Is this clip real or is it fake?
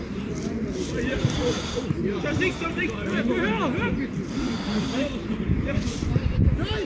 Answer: fake